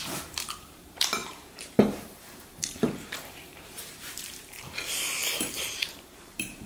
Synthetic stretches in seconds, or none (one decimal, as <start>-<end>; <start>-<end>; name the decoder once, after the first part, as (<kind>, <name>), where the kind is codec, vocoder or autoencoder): 0.0-6.7 (vocoder, BigVGAN v2)